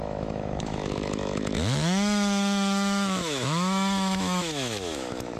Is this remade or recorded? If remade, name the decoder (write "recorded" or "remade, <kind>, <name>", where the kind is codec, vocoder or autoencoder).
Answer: remade, autoencoder, DAC-VAE